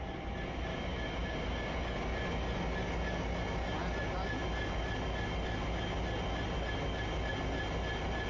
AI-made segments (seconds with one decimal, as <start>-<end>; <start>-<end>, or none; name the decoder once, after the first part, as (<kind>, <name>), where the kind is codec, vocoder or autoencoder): none